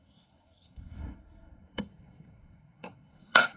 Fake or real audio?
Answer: fake